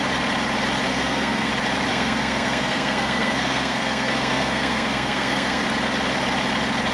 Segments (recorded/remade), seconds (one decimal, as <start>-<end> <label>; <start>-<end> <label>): 0.0-0.9 recorded; 0.9-1.5 remade; 1.5-1.9 recorded; 1.9-5.6 remade; 5.6-6.9 recorded